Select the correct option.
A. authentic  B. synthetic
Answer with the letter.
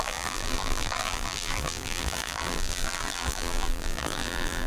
B